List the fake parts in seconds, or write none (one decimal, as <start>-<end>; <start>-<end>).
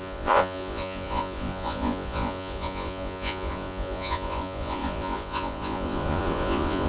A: 0.0-6.9